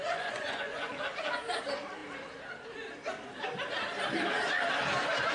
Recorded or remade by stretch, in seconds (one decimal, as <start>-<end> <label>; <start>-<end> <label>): 0.0-0.9 remade; 0.9-5.3 recorded